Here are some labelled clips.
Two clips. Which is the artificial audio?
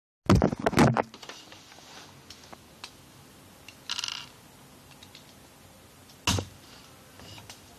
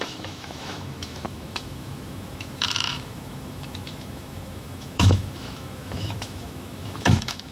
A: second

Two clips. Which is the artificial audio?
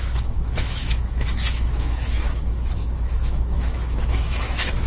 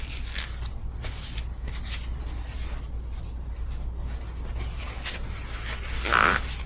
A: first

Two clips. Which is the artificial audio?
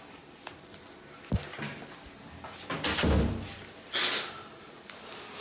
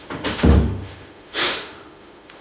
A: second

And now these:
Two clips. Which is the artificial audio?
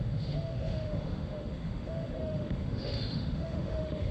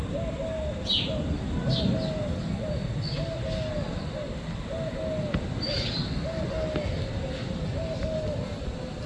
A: first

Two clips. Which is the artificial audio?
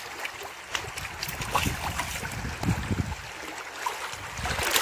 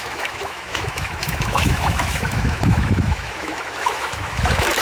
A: second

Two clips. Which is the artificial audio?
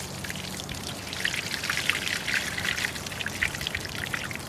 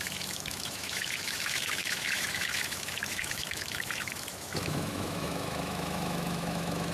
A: second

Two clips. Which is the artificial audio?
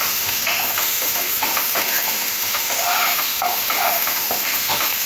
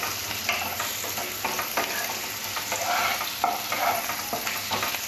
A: first